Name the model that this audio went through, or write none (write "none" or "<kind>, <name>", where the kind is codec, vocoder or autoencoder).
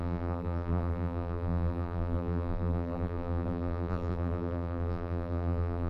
vocoder, BigVGAN v2